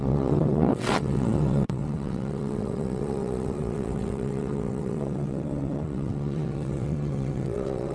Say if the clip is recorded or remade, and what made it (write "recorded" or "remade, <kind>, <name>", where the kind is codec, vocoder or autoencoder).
remade, vocoder, WaveNeXt